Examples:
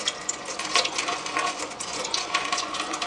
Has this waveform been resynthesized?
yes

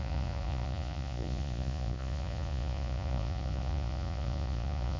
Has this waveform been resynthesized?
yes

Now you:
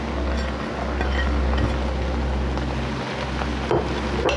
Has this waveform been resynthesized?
no